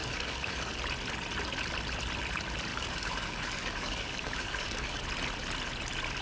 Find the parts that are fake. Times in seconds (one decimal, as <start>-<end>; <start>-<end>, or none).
0.0-0.7; 2.7-5.0